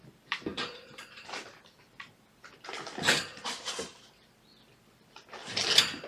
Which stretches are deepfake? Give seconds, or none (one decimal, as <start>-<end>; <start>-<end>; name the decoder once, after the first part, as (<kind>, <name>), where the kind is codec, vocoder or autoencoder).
0.0-6.1 (vocoder, BigVGAN v2)